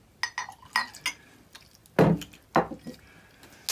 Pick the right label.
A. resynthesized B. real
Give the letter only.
B